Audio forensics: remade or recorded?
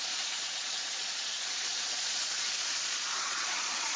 remade